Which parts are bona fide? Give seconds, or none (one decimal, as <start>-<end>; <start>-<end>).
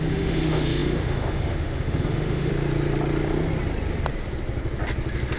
2.5-5.4